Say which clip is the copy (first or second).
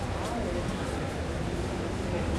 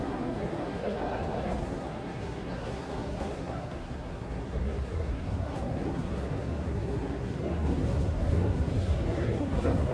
second